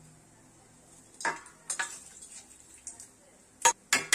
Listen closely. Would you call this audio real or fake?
real